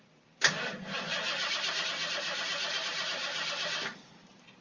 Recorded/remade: remade